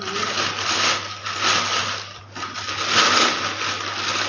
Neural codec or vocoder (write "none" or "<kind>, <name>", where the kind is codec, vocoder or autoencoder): none